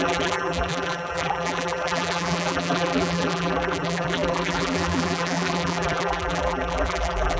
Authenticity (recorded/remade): remade